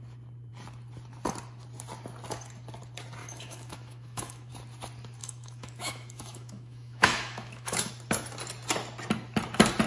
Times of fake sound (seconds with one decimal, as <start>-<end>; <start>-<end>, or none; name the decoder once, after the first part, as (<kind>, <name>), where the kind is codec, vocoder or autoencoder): 3.2-4.5 (autoencoder, DAC-VAE); 5.2-7.9